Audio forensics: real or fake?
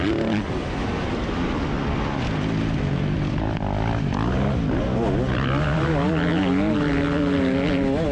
real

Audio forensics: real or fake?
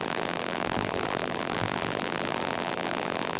fake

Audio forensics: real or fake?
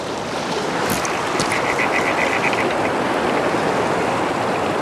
real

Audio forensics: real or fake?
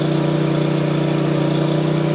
real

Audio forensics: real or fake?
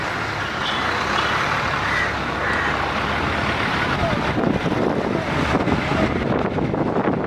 real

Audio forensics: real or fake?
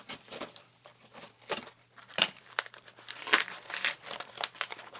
fake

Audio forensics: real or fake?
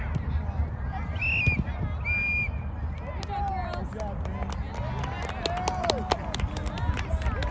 real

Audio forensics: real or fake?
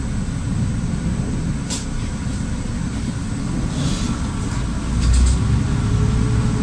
real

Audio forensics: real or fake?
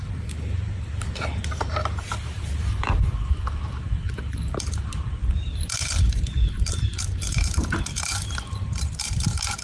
fake